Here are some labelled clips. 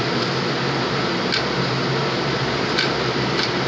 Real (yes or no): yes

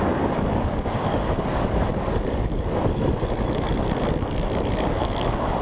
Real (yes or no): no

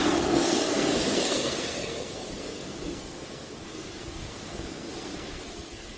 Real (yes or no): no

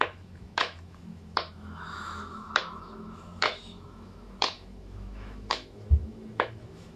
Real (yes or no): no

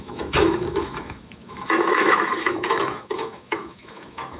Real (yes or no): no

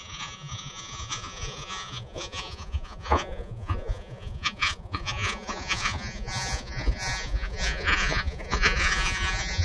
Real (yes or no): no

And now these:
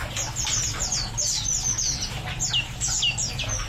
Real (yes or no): yes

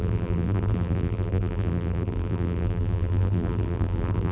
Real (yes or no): no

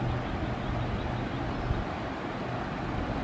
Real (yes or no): yes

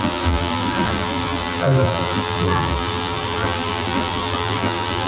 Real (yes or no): no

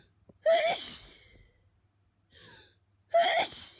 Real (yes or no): yes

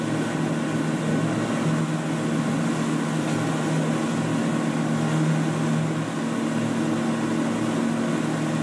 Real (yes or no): yes